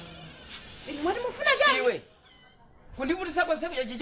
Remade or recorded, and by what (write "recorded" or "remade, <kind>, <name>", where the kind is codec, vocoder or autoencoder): recorded